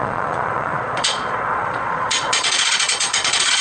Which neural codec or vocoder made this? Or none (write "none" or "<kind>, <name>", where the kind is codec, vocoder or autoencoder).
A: vocoder, Vocos